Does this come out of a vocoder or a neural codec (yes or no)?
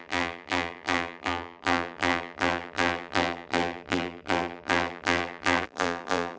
yes